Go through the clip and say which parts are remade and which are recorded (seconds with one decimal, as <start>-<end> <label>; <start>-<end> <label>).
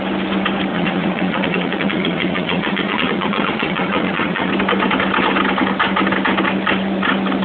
0.0-0.7 recorded; 0.7-4.5 remade; 4.5-7.4 recorded